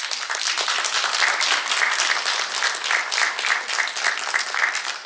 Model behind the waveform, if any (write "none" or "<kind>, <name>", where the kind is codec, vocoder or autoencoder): none